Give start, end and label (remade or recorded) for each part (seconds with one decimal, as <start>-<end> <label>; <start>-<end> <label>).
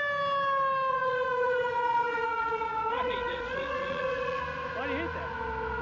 0.0-0.9 recorded; 0.9-4.4 remade; 4.4-5.8 recorded